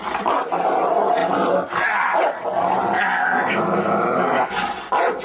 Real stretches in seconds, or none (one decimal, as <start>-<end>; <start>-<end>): 0.0-5.2